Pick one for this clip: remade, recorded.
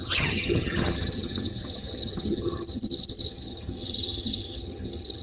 remade